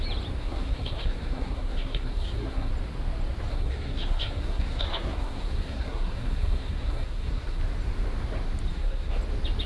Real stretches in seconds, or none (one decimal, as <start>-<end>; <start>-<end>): 0.0-0.4; 2.7-3.5; 7.6-8.7; 9.2-9.7